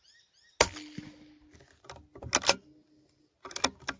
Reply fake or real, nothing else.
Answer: real